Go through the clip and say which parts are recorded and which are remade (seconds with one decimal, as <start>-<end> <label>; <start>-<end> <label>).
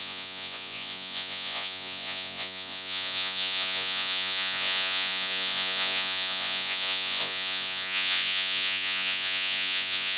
0.0-10.2 remade